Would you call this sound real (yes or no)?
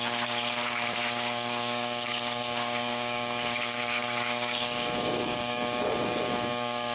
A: no